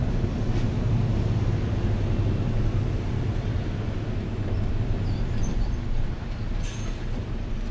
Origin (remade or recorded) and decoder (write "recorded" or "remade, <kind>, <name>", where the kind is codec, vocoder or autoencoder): recorded